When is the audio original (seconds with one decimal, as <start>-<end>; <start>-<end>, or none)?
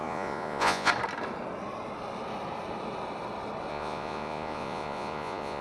0.9-3.7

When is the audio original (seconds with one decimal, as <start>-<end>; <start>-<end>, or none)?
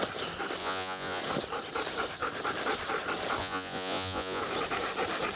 0.0-0.6; 1.2-3.4; 4.4-5.4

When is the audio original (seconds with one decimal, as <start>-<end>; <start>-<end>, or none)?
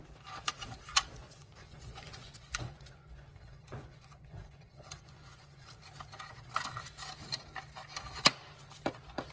0.0-0.9; 5.7-9.3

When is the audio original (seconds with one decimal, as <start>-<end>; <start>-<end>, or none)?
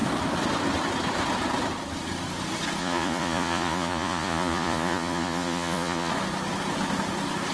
0.0-2.8; 6.1-7.5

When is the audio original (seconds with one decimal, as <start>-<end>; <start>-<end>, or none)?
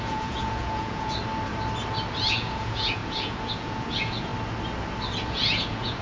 1.2-2.2; 4.3-5.3